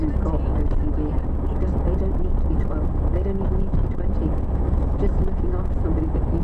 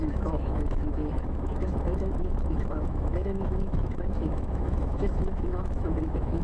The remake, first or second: second